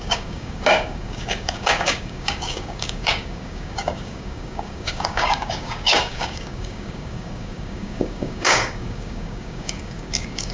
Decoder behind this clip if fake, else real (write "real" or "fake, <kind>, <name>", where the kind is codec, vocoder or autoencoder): fake, codec, DAC